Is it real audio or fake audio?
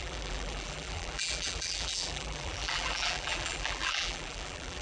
fake